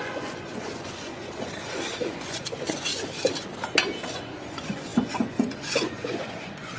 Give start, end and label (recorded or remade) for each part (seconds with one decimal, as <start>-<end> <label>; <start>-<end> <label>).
0.0-2.9 remade; 2.9-4.1 recorded; 4.1-6.8 remade